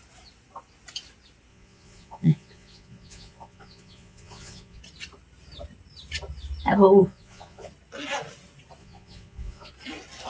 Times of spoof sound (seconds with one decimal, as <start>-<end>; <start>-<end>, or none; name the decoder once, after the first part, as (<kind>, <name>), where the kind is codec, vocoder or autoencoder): 1.5-4.8 (vocoder, Vocos); 7.0-7.7; 8.8-9.7